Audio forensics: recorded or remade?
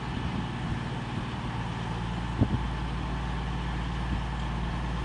recorded